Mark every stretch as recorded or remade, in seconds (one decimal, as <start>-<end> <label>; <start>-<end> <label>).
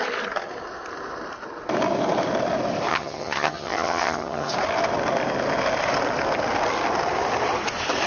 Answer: 0.0-2.9 recorded; 2.9-4.5 remade; 4.5-8.1 recorded